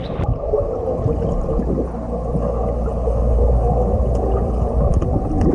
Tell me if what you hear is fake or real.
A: real